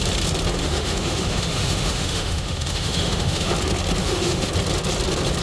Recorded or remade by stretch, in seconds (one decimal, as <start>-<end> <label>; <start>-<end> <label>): 0.0-0.6 recorded; 0.6-3.5 remade; 3.5-4.0 recorded; 4.0-4.5 remade; 4.5-5.4 recorded